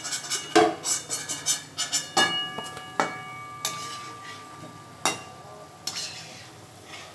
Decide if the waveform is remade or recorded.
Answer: recorded